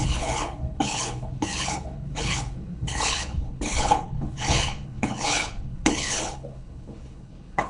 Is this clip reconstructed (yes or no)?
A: yes